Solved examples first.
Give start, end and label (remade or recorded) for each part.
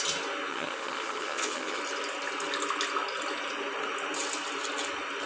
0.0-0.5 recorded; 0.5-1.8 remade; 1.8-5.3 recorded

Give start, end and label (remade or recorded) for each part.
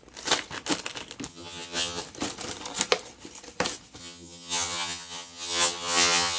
0.0-1.3 recorded; 1.3-2.0 remade; 2.0-4.0 recorded; 4.0-6.4 remade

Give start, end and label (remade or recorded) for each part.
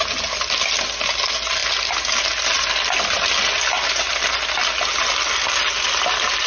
0.0-6.5 recorded